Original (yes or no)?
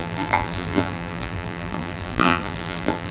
no